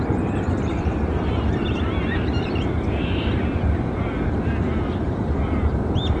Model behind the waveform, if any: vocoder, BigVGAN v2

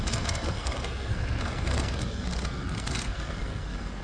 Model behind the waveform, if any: codec, SNAC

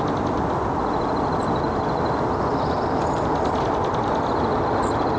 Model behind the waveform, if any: none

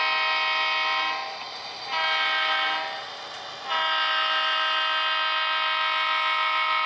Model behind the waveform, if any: none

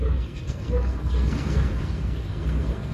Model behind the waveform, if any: codec, SNAC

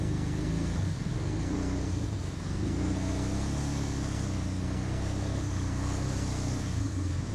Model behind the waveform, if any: codec, SNAC